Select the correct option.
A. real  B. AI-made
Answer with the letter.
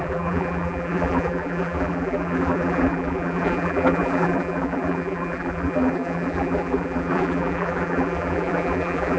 B